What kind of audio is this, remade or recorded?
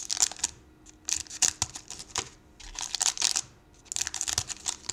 recorded